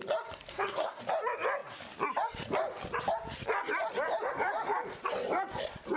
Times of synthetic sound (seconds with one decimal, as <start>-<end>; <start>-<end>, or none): 0.5-1.0